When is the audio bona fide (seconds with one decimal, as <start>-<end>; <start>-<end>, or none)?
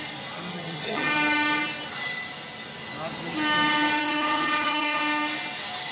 0.0-0.5; 1.1-4.0; 5.0-5.9